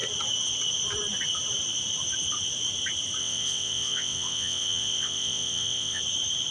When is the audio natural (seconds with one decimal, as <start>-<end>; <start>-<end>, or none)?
0.0-3.2; 6.0-6.5